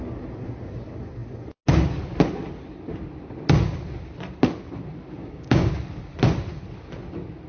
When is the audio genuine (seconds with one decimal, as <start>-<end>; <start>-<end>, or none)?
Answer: 0.0-5.2; 5.7-7.5